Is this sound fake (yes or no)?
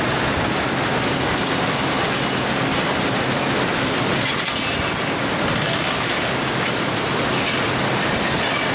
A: no